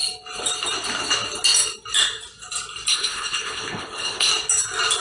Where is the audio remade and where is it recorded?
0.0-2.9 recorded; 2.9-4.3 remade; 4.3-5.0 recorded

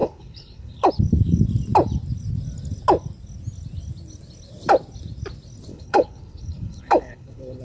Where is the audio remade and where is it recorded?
0.0-0.9 remade; 0.9-5.7 recorded; 5.7-7.6 remade

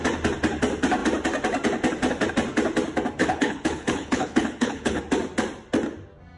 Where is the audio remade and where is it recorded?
0.0-3.2 recorded; 3.2-5.0 remade; 5.0-6.4 recorded

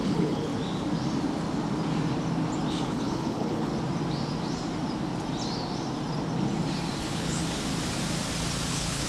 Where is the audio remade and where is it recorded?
0.0-0.5 remade; 0.5-2.7 recorded; 2.7-3.7 remade; 3.7-7.0 recorded; 7.0-7.4 remade; 7.4-8.7 recorded; 8.7-9.1 remade

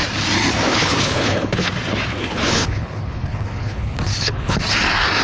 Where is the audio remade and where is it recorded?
0.0-0.7 recorded; 0.7-1.7 remade; 1.7-2.1 recorded; 2.1-4.6 remade; 4.6-5.2 recorded

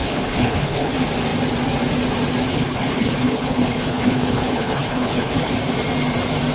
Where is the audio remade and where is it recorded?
0.0-0.9 remade; 0.9-2.5 recorded; 2.5-5.5 remade; 5.5-6.5 recorded

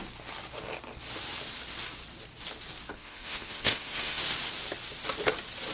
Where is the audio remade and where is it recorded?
0.0-2.9 recorded; 2.9-4.2 remade; 4.2-5.7 recorded

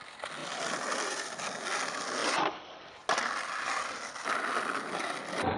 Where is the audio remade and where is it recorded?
0.0-5.6 recorded